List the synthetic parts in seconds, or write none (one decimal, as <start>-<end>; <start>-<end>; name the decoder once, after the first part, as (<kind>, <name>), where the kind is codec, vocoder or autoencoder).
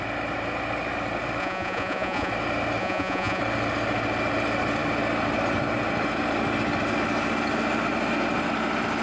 1.4-2.3 (vocoder, Vocos); 2.8-3.4